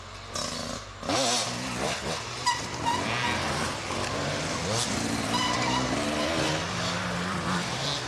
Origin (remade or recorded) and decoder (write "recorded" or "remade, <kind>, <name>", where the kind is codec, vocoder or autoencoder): recorded